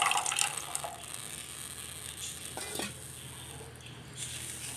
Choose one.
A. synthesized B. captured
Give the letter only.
B